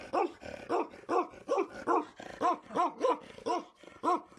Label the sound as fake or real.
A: real